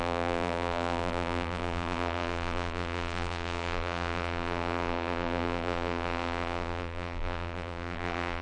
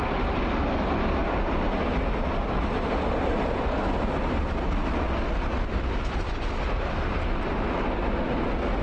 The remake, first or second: first